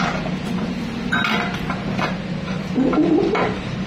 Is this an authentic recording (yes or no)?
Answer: yes